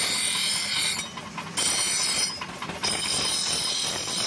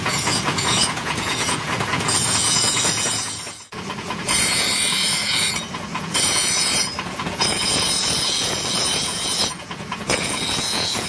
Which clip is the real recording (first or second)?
first